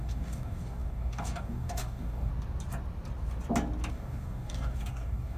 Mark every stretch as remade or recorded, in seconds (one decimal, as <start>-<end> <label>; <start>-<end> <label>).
0.0-2.3 remade; 2.3-3.9 recorded; 3.9-5.4 remade